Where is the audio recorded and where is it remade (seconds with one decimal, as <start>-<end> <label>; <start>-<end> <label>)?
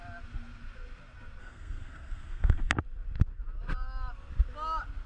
0.0-1.4 recorded; 1.4-2.7 remade; 2.7-5.1 recorded